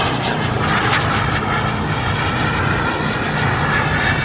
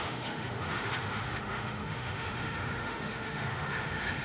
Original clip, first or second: first